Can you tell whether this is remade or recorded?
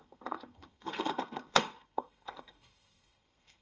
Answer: remade